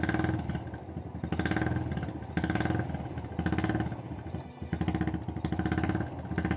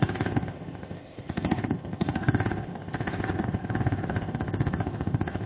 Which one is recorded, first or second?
first